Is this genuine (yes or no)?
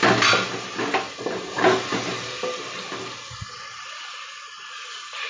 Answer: yes